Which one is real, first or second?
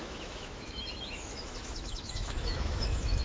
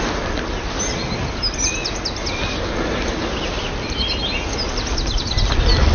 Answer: second